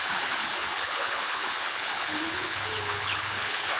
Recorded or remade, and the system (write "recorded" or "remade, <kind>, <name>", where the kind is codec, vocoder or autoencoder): remade, codec, HILCodec